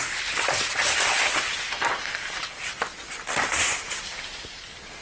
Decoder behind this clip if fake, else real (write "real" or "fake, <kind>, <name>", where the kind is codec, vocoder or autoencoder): real